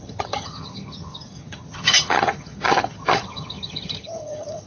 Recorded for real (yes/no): no